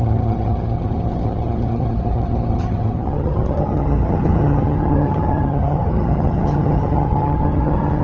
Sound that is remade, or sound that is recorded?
remade